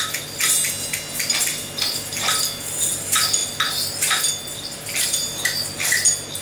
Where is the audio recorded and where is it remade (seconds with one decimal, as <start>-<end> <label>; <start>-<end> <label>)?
0.0-6.4 recorded